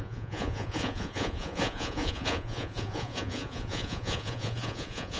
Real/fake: fake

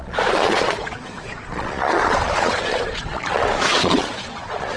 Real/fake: fake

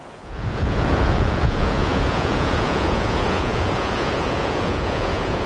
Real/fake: fake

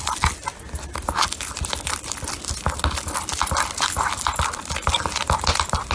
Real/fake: real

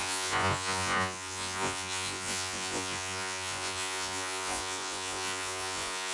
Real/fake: fake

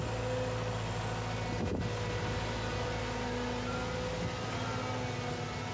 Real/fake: real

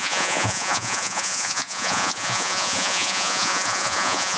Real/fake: fake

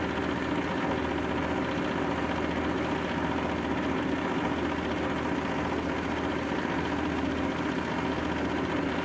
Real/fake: real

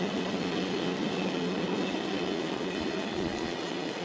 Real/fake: fake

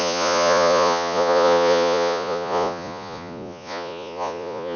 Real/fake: fake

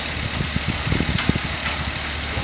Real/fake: real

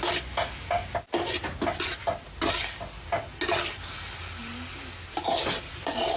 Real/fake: real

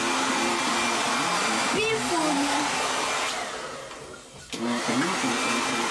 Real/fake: real